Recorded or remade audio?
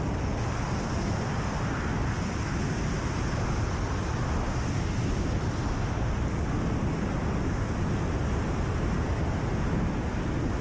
recorded